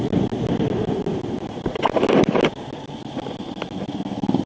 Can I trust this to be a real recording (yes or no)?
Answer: yes